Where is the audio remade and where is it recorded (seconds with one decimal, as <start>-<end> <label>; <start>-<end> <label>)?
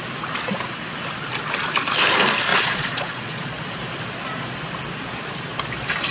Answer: 0.0-2.5 recorded; 2.5-3.6 remade; 3.6-6.1 recorded